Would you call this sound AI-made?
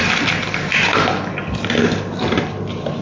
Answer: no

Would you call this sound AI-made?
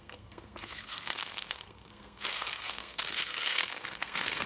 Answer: yes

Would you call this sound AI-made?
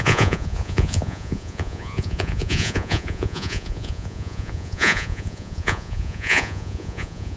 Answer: yes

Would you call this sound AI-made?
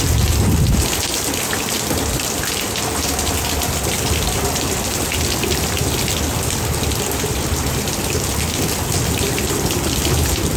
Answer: no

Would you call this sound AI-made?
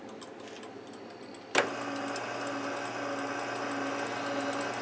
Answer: no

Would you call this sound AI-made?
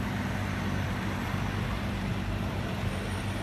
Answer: yes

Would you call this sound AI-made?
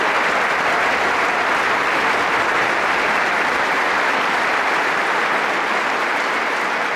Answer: yes